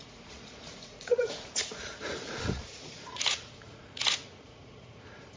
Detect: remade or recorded remade